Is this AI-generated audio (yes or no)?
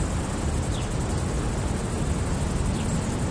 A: no